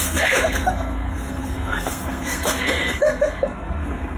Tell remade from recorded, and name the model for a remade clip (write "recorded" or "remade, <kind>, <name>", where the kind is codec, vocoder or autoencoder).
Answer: remade, codec, SNAC